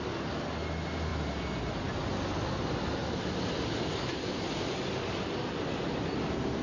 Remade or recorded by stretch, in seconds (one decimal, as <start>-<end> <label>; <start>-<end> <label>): 0.0-6.6 recorded